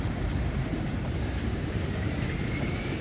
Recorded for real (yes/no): no